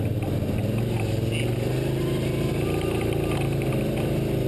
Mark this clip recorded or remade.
recorded